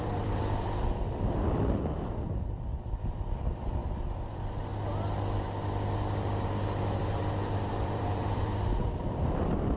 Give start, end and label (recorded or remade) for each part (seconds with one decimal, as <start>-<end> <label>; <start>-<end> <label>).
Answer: 0.0-3.8 remade; 3.8-4.3 recorded; 4.3-4.7 remade; 4.7-7.7 recorded; 7.7-9.8 remade

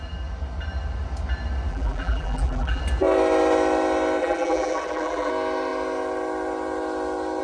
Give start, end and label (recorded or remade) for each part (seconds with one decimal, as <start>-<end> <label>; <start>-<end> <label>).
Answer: 0.0-1.7 recorded; 1.7-2.8 remade; 2.8-4.2 recorded; 4.2-5.3 remade; 5.3-7.4 recorded

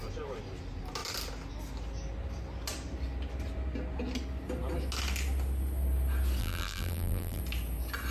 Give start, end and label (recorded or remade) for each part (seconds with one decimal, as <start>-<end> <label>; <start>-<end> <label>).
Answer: 0.0-6.4 recorded; 6.4-7.4 remade; 7.4-8.1 recorded